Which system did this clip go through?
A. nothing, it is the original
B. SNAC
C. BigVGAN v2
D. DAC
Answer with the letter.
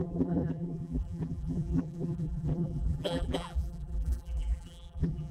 C